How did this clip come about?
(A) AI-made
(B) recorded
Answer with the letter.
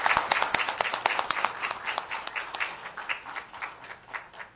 B